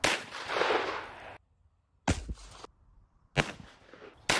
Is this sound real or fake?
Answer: real